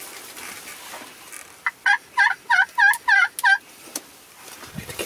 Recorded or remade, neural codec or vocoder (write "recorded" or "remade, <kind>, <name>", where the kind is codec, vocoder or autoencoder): recorded